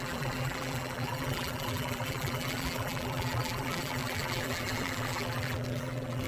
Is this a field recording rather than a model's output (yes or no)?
no